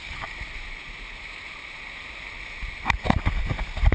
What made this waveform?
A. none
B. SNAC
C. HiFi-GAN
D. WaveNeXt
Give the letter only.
A